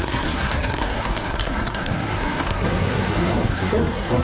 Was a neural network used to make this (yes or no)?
yes